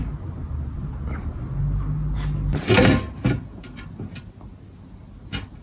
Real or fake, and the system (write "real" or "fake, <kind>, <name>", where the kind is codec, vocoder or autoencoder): real